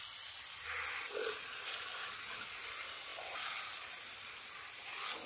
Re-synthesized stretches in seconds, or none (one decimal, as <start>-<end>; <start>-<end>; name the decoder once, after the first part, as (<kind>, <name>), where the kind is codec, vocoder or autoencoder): 3.1-4.7 (vocoder, BigVGAN v2)